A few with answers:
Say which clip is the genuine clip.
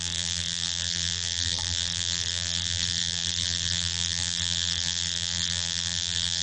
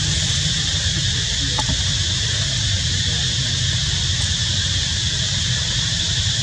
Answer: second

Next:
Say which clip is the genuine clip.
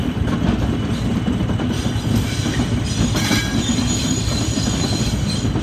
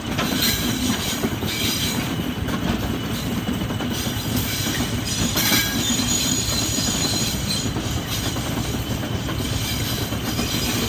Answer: first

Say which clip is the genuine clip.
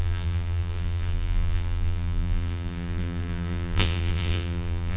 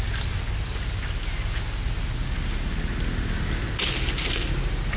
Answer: second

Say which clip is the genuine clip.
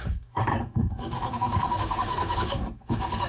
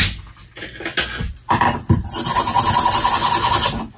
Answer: second